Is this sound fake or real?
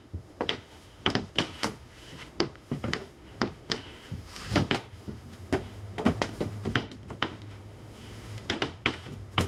fake